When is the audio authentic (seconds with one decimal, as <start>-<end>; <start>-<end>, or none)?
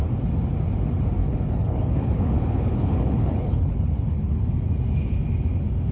0.0-1.2; 4.5-5.9